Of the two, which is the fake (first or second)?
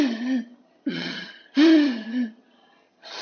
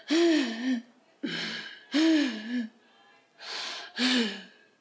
first